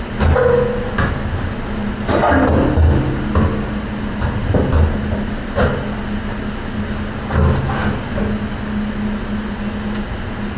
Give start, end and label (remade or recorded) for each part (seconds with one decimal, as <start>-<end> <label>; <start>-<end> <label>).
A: 0.0-10.6 recorded